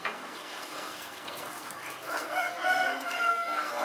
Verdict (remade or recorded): remade